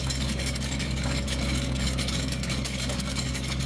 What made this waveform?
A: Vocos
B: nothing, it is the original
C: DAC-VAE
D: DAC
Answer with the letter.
D